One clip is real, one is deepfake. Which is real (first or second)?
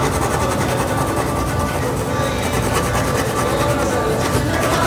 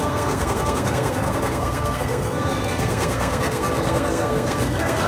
first